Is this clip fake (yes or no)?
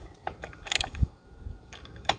yes